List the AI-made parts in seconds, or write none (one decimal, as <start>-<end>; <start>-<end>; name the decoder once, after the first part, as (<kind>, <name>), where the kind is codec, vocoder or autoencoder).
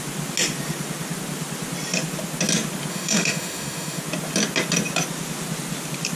2.9-4.0 (autoencoder, DAC-VAE)